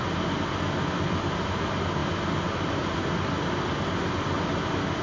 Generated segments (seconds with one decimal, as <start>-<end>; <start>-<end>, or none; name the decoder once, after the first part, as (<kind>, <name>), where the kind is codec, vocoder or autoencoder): none

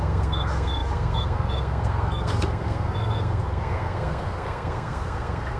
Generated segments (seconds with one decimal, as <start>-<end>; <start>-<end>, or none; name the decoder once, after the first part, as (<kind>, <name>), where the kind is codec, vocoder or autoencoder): 0.0-5.6 (codec, SNAC)